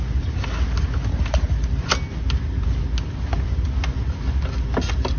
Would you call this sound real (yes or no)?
yes